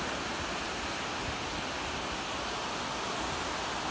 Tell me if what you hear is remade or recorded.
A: recorded